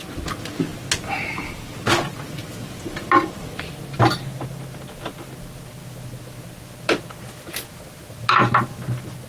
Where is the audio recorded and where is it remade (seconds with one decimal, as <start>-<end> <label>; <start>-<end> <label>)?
0.0-9.3 recorded